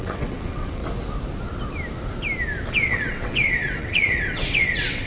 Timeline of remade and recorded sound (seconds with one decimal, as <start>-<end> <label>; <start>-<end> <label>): 0.0-0.8 remade; 0.8-2.7 recorded; 2.7-5.1 remade